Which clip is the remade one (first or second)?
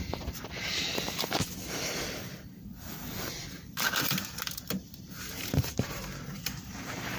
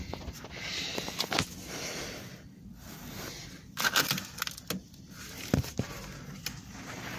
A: first